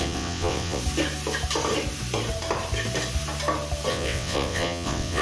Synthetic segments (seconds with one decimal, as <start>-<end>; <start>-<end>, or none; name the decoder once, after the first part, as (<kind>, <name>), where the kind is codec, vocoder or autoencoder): 0.0-0.8 (vocoder, WaveNeXt); 3.9-5.2